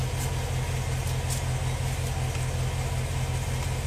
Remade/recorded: recorded